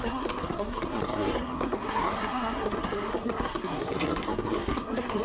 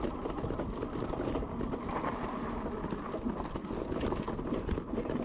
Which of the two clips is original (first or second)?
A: second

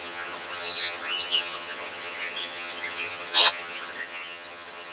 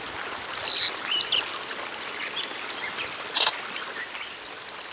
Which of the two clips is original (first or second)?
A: second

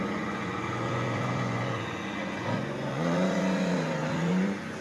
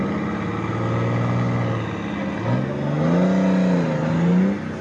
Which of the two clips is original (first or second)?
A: second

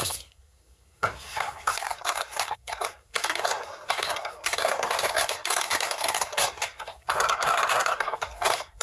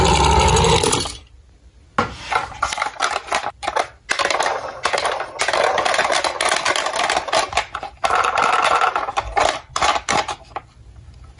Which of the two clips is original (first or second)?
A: second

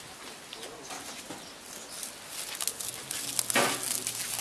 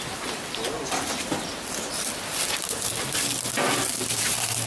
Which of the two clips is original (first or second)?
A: first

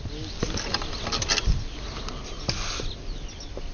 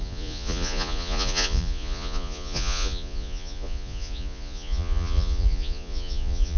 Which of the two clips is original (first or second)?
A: first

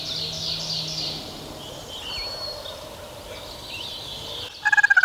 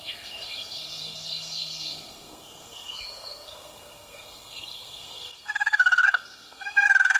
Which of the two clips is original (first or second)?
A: first